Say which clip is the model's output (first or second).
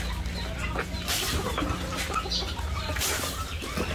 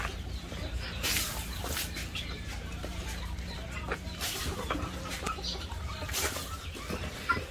second